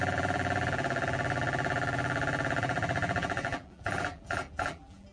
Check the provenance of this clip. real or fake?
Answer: fake